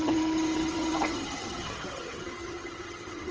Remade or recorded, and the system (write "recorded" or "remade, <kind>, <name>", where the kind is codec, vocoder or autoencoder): remade, vocoder, HiFi-GAN